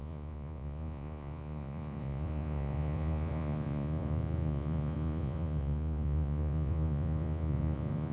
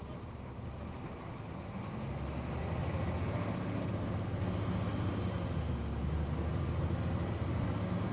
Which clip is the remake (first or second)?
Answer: first